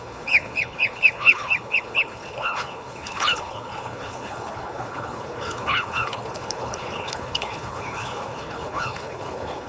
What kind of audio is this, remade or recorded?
remade